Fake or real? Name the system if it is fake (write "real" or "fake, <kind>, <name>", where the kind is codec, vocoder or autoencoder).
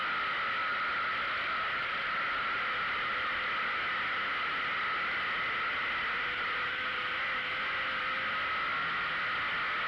fake, vocoder, BigVGAN v2